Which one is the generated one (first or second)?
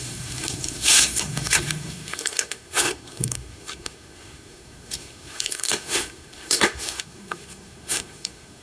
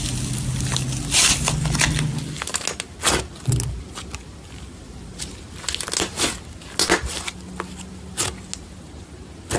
first